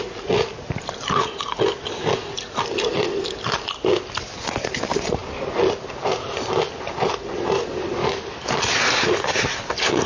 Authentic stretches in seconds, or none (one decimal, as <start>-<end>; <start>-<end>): 0.0-8.0; 8.6-10.1